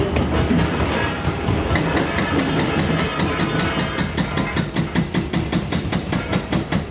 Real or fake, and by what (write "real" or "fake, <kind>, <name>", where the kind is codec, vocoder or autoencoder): real